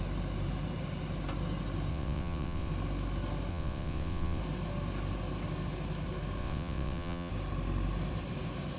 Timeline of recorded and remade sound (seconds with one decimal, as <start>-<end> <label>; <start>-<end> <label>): 0.0-1.9 recorded; 1.9-2.7 remade; 2.7-3.5 recorded; 3.5-4.4 remade; 4.4-6.4 recorded; 6.4-7.3 remade; 7.3-8.8 recorded